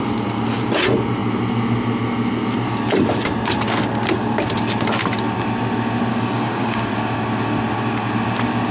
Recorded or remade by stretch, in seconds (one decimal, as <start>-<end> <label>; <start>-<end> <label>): 0.0-6.1 recorded; 6.1-6.9 remade; 6.9-8.7 recorded